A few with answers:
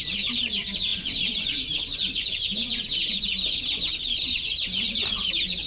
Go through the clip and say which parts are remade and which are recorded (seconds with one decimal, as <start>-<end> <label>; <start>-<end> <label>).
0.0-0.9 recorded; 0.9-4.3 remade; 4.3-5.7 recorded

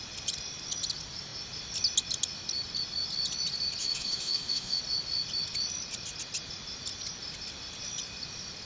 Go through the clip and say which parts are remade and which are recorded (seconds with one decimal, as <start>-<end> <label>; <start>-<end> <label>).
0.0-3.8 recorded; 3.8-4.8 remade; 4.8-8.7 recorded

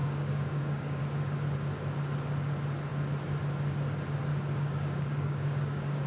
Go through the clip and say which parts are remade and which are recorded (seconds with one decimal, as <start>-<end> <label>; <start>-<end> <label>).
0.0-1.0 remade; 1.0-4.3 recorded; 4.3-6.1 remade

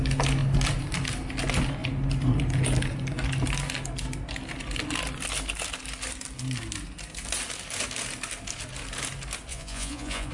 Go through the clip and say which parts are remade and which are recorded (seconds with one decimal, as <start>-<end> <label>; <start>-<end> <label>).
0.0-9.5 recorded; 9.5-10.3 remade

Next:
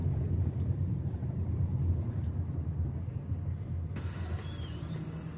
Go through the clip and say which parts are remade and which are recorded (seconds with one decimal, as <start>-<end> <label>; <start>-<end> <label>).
0.0-5.4 recorded